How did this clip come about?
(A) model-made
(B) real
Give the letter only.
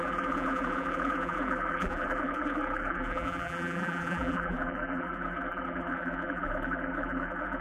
A